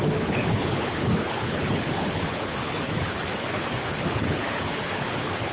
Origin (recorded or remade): remade